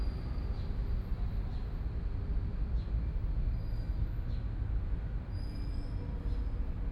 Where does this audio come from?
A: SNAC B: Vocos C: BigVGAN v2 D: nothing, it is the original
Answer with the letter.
D